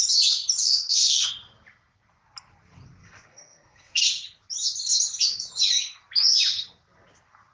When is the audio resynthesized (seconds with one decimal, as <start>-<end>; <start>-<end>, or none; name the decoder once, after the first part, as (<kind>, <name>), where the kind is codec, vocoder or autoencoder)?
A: 0.6-1.3 (codec, SNAC); 3.0-4.0